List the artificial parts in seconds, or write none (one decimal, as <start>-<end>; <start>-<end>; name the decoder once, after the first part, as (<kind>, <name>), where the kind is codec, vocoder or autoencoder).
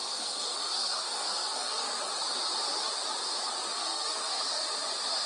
0.0-2.0 (codec, SNAC); 3.8-4.4